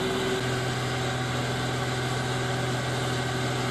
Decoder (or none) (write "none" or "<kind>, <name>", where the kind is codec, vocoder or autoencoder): none